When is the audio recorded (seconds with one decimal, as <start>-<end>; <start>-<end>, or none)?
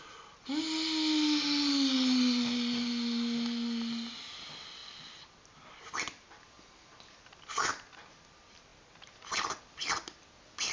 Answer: 0.0-10.7